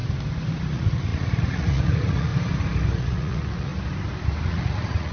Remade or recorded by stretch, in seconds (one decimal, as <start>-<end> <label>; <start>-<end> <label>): 0.0-0.7 recorded; 0.7-2.3 remade; 2.3-3.0 recorded; 3.0-3.7 remade; 3.7-4.5 recorded; 4.5-5.1 remade